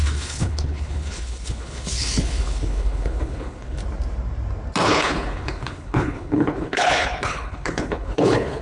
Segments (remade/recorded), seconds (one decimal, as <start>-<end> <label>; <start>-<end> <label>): 0.0-3.8 remade; 3.8-4.8 recorded; 4.8-8.6 remade